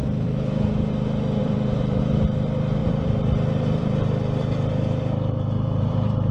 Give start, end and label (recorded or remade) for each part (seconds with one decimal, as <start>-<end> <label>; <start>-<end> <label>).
0.0-0.5 remade; 0.5-1.4 recorded; 1.4-2.0 remade; 2.0-2.8 recorded; 2.8-6.3 remade